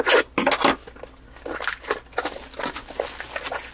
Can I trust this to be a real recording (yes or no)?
yes